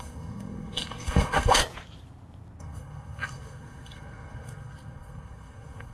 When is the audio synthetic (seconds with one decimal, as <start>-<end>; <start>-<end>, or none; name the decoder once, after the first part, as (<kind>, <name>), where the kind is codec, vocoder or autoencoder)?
0.0-1.6 (codec, SNAC); 2.6-5.9

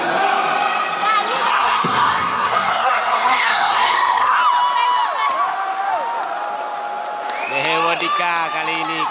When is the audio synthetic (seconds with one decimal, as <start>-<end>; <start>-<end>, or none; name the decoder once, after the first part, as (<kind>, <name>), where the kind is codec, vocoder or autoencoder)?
1.5-4.4 (codec, SNAC)

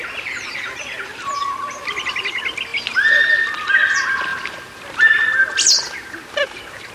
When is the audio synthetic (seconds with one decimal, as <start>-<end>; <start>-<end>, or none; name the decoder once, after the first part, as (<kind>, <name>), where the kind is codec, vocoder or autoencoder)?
none

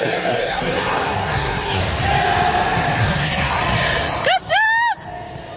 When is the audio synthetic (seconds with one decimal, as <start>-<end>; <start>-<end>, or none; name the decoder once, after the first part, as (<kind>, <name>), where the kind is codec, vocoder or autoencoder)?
0.0-1.8 (codec, SNAC); 3.0-3.6

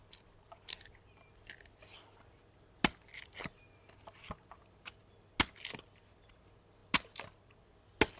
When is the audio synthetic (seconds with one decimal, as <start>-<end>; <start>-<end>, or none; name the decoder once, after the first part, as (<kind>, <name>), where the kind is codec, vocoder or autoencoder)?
none

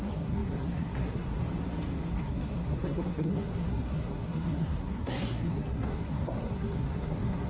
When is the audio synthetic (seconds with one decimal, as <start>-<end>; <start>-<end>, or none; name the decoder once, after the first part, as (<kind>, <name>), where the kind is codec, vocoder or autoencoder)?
0.0-1.3 (codec, SNAC); 2.2-7.5

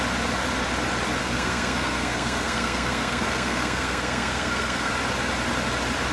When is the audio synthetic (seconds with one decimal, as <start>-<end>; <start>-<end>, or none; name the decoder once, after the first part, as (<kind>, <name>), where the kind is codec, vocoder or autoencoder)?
1.2-4.9 (codec, SNAC)

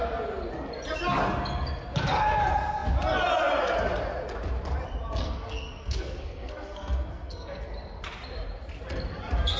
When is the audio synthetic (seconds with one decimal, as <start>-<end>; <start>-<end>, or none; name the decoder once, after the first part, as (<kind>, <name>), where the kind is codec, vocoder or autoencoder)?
5.2-7.7 (codec, SNAC)